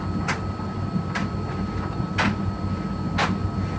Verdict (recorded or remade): recorded